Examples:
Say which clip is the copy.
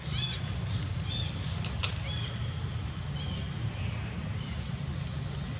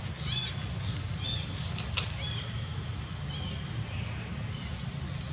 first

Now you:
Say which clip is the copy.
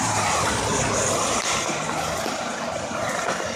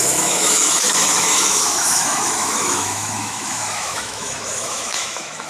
second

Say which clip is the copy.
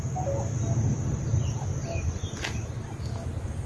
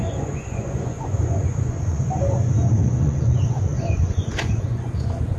second